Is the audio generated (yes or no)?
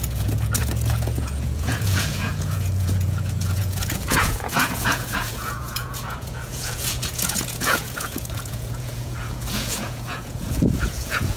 yes